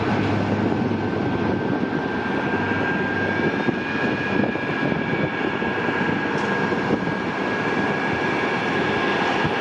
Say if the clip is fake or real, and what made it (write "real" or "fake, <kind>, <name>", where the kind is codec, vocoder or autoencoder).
real